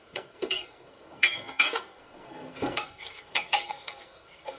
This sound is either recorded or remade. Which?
remade